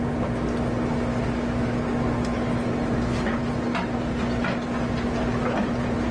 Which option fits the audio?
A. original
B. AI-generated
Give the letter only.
A